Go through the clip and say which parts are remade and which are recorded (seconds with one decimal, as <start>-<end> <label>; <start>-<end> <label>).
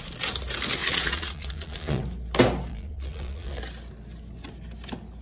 0.0-0.8 recorded; 0.8-2.0 remade; 2.0-2.7 recorded; 2.7-3.6 remade; 3.6-5.2 recorded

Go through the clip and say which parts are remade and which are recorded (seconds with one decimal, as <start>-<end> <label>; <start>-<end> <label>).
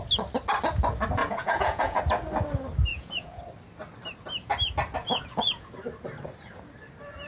0.0-1.2 recorded; 1.2-2.0 remade; 2.0-2.9 recorded; 2.9-3.4 remade; 3.4-5.0 recorded; 5.0-5.7 remade; 5.7-7.3 recorded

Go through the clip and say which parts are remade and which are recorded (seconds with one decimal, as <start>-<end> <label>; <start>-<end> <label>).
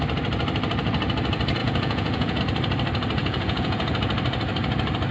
0.0-1.6 recorded; 1.6-2.4 remade; 2.4-3.2 recorded; 3.2-3.9 remade; 3.9-5.1 recorded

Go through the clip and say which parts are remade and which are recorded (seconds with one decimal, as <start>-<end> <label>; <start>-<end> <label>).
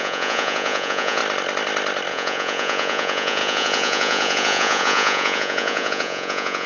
0.0-1.2 remade; 1.2-2.1 recorded; 2.1-6.7 remade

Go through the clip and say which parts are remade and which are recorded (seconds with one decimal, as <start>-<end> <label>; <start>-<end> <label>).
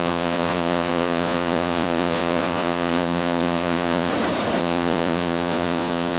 0.0-4.1 remade; 4.1-4.6 recorded; 4.6-6.2 remade